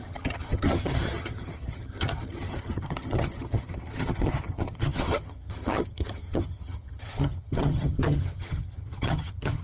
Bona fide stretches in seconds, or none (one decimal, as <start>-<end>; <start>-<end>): none